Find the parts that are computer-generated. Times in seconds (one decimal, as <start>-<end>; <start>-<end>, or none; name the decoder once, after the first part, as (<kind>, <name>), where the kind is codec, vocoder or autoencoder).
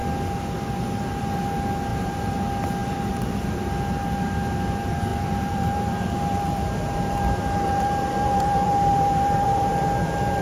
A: 1.9-2.4 (vocoder, BigVGAN v2); 2.8-3.3; 5.1-10.4